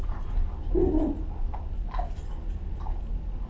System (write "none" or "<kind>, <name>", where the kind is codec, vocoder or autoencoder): none